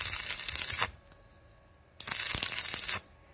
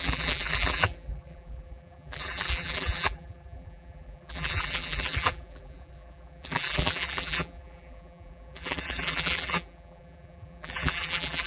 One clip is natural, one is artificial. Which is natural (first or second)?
first